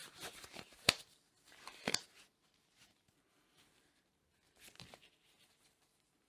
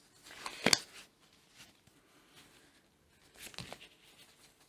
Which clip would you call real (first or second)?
second